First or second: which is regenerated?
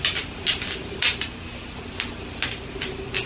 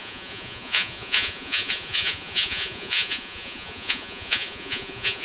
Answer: second